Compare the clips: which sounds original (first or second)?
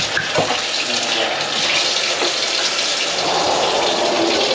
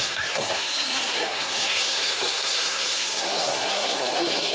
first